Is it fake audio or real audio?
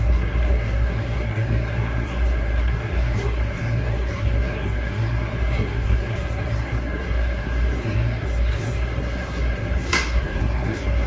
fake